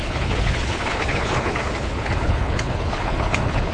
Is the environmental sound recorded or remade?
remade